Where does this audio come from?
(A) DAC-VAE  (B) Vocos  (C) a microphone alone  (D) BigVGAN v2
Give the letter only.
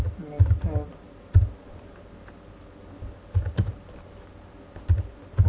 C